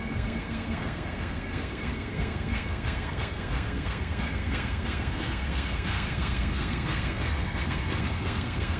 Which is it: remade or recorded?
remade